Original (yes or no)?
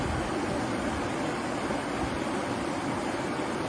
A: yes